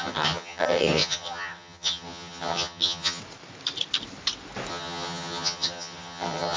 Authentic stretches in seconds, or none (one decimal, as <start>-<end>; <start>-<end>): 3.2-4.7